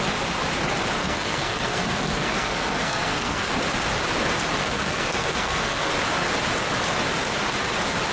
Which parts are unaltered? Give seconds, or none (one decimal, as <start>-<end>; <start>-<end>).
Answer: 0.0-1.0; 3.5-4.6; 5.9-8.1